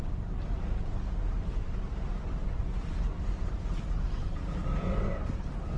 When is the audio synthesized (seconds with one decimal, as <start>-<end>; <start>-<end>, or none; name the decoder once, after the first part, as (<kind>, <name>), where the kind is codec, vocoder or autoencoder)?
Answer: 2.6-5.3 (vocoder, BigVGAN v2)